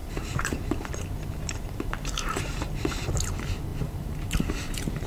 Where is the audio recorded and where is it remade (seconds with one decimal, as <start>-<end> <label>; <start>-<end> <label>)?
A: 0.0-3.1 remade; 3.1-3.7 recorded; 3.7-5.1 remade